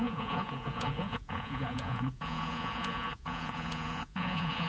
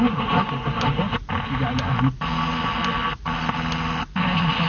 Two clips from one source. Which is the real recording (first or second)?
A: second